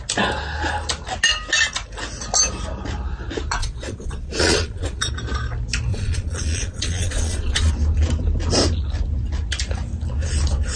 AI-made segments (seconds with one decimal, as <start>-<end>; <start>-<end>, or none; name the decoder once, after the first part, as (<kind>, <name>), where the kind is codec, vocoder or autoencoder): 3.6-5.1 (vocoder, Vocos); 5.9-7.7